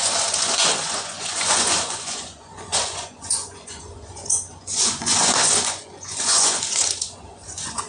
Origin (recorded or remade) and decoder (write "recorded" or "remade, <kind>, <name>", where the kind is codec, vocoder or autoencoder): remade, vocoder, Vocos